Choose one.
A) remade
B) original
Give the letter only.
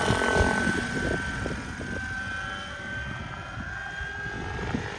B